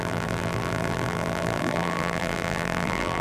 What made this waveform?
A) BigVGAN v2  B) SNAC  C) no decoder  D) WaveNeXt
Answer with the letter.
A